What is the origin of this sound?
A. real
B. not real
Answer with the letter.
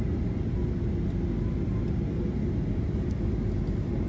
A